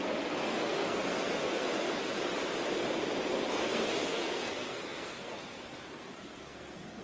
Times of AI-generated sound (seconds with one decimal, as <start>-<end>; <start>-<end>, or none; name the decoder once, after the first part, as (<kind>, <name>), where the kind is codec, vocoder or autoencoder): 0.0-2.0 (codec, SNAC); 3.5-7.0